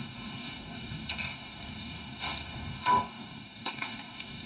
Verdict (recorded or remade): remade